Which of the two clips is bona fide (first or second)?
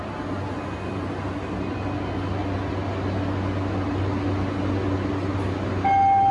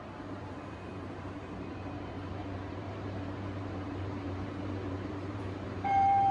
first